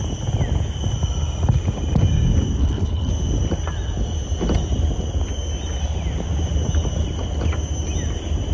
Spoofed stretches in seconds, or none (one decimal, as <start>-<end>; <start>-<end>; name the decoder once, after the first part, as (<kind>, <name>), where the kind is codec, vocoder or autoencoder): 2.6-3.1 (codec, HILCodec)